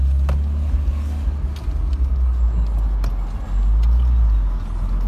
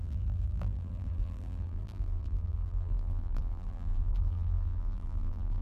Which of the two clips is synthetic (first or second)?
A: second